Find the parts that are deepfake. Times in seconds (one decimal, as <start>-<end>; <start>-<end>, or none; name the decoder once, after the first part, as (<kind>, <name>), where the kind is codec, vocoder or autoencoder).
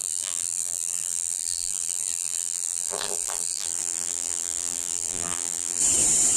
0.0-5.8 (vocoder, BigVGAN v2)